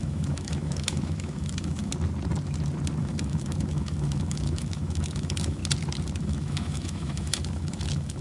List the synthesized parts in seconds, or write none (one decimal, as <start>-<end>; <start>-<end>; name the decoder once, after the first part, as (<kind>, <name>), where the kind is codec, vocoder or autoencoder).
0.0-1.9 (autoencoder, DAC-VAE); 3.0-5.6; 6.2-8.2